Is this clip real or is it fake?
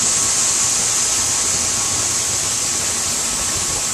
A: real